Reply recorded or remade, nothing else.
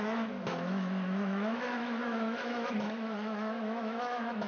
remade